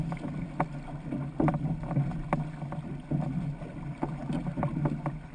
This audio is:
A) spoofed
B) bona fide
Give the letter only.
B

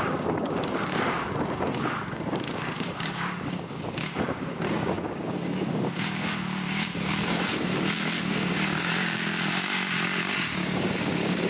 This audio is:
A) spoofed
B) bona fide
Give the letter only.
A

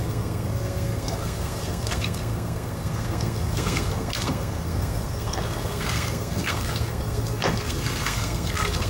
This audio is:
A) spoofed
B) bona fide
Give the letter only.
A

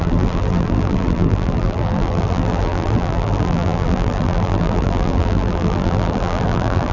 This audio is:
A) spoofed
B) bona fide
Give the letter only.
A